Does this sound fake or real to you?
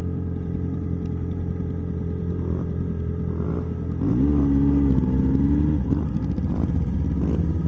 real